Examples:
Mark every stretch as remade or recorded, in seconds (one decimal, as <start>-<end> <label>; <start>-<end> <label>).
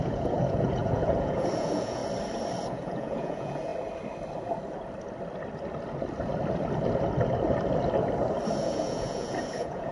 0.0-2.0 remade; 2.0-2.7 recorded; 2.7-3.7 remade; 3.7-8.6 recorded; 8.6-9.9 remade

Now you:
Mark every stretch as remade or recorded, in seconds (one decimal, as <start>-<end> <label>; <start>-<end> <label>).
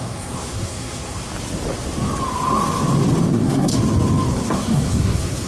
0.0-1.3 remade; 1.3-3.3 recorded; 3.3-3.7 remade; 3.7-4.3 recorded; 4.3-5.5 remade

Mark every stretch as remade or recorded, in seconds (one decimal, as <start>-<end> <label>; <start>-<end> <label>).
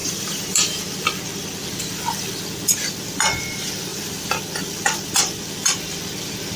0.0-0.8 remade; 0.8-3.9 recorded; 3.9-4.4 remade; 4.4-6.6 recorded